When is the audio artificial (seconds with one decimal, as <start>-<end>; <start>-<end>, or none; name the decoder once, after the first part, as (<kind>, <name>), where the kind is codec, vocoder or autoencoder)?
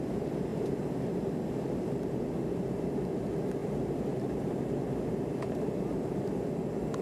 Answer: 0.5-2.2 (vocoder, BigVGAN v2); 3.6-6.2